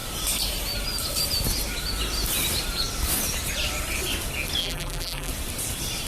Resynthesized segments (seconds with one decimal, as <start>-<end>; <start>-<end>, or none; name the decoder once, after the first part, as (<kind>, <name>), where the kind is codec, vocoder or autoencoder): 4.6-5.3 (vocoder, BigVGAN v2)